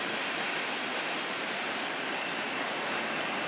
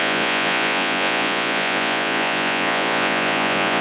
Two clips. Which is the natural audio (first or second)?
first